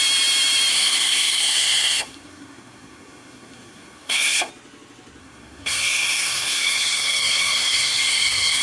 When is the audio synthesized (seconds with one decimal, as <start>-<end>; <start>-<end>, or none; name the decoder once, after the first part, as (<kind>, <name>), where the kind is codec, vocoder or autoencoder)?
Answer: 0.7-4.5 (codec, SNAC); 5.2-8.6